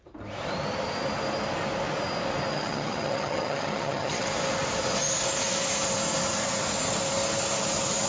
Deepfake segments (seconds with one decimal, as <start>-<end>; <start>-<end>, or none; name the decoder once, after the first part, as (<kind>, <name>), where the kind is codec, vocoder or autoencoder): 2.5-4.3 (vocoder, HiFi-GAN)

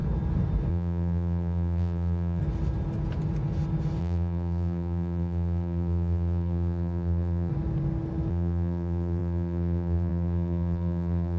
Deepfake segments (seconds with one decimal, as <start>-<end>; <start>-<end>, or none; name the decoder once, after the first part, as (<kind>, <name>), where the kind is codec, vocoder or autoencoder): 0.7-2.4 (vocoder, BigVGAN v2); 4.0-7.5; 8.3-11.4

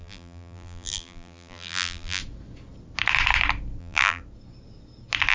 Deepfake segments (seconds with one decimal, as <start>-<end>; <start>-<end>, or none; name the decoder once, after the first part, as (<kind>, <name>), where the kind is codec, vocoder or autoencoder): 0.0-2.2 (vocoder, BigVGAN v2); 3.8-4.2

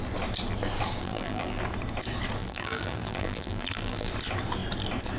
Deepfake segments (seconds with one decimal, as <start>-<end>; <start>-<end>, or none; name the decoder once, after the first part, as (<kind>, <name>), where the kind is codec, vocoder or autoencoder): 1.0-1.6 (vocoder, BigVGAN v2); 2.4-4.1

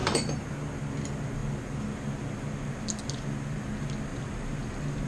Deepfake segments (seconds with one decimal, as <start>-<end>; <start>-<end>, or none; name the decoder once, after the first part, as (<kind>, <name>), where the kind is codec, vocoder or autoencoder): 0.0-0.5 (vocoder, BigVGAN v2); 4.1-5.1

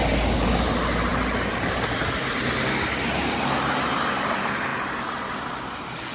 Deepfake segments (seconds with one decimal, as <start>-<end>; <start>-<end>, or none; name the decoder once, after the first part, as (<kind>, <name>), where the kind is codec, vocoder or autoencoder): none